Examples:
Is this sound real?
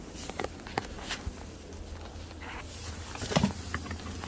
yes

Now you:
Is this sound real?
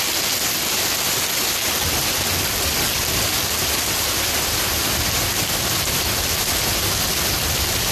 yes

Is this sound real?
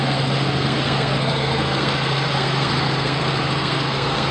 no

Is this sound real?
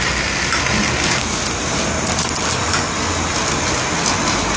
yes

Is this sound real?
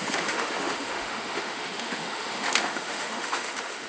no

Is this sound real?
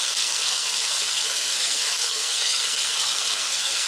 no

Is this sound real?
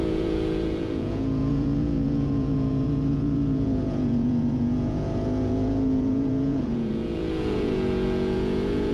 no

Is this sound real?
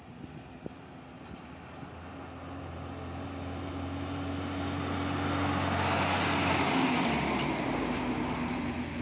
yes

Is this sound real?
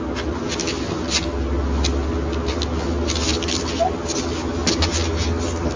yes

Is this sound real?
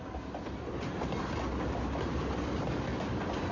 yes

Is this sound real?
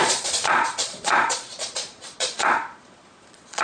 no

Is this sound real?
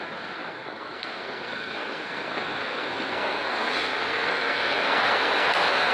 no